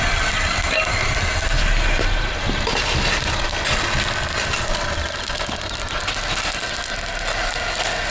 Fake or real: real